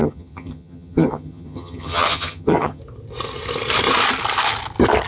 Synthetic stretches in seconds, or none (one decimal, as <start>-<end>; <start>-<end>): 0.0-2.8